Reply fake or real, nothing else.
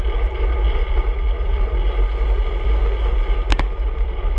real